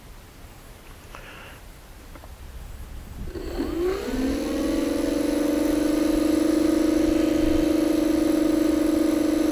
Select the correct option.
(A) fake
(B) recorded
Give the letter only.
B